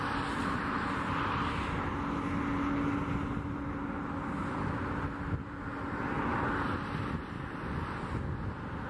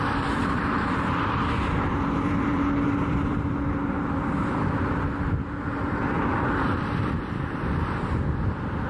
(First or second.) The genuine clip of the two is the first